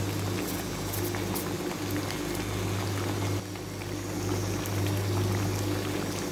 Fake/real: real